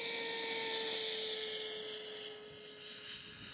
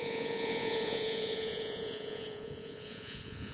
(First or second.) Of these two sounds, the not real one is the second